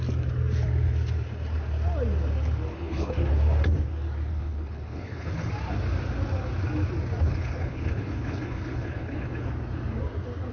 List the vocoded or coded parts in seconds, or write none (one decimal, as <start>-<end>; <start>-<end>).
2.7-3.3; 4.3-5.5; 7.3-9.5